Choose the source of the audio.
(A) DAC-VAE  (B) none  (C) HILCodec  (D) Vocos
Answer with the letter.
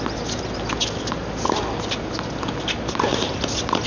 B